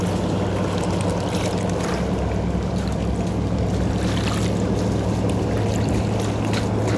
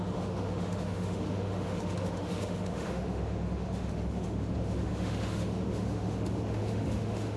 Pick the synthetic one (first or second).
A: second